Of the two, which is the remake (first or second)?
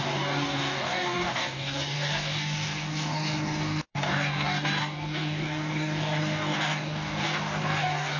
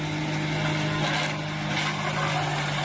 first